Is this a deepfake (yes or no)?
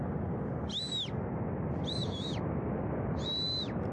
no